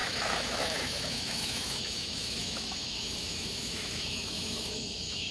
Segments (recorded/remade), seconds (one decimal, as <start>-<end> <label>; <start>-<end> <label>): 0.0-5.3 remade